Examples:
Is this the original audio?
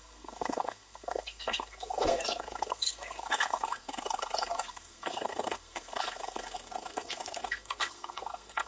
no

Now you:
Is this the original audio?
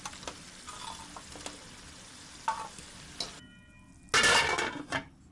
yes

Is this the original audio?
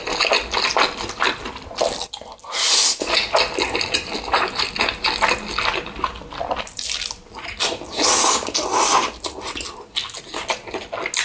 yes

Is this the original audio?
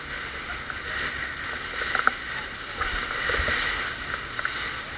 yes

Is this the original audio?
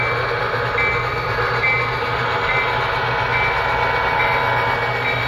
yes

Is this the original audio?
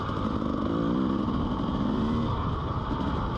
no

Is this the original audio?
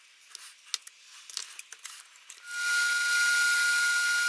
yes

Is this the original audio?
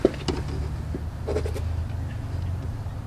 yes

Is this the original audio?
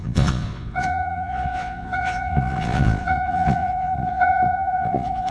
no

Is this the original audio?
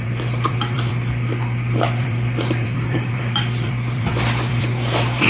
no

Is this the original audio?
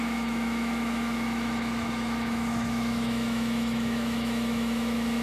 no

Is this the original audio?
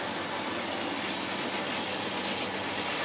yes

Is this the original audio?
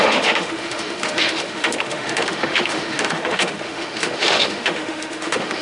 no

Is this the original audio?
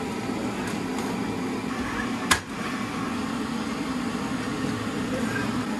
yes